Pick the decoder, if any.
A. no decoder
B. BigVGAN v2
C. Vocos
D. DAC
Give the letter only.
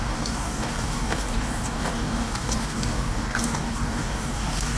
D